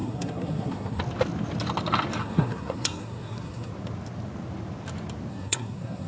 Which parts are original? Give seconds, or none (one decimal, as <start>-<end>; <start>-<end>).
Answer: 1.0-2.2; 3.7-5.3